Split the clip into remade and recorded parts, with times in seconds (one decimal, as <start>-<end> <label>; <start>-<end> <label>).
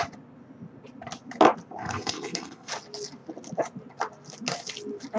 0.0-1.8 recorded; 1.8-2.7 remade; 2.7-5.2 recorded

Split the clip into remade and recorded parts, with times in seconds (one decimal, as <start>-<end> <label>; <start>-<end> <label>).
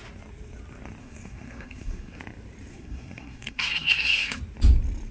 0.0-1.0 recorded; 1.0-2.2 remade; 2.2-2.7 recorded; 2.7-4.4 remade; 4.4-5.1 recorded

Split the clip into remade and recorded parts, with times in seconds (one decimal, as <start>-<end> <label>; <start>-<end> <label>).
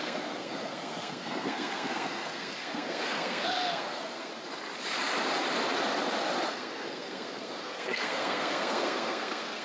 0.0-4.3 remade; 4.3-6.5 recorded; 6.5-9.6 remade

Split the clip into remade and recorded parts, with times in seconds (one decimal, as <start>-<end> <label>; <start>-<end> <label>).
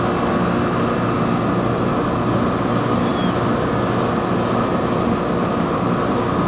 0.0-6.5 recorded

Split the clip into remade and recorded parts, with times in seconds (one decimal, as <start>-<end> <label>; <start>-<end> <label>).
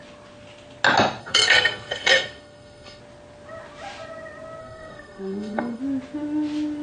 0.0-1.2 recorded; 1.2-3.0 remade; 3.0-4.6 recorded; 4.6-5.8 remade; 5.8-6.8 recorded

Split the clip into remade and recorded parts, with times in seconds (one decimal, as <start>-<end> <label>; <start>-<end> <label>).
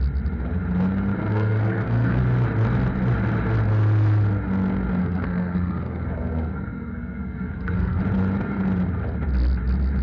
0.0-1.3 recorded; 1.3-2.2 remade; 2.2-5.0 recorded; 5.0-8.0 remade; 8.0-10.0 recorded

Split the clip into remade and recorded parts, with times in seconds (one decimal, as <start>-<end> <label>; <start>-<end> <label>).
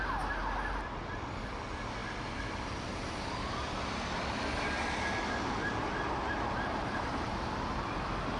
0.0-8.4 recorded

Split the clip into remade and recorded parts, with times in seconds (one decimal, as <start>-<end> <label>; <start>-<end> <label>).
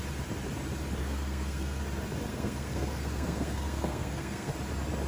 0.0-1.0 recorded; 1.0-1.8 remade; 1.8-2.3 recorded; 2.3-4.5 remade; 4.5-5.1 recorded